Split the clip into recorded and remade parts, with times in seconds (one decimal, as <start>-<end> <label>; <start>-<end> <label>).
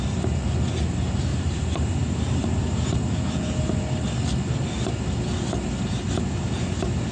0.0-1.3 recorded; 1.3-2.6 remade; 2.6-7.1 recorded